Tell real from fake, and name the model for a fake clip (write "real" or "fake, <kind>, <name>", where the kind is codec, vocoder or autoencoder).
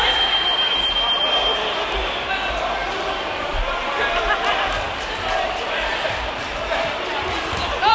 real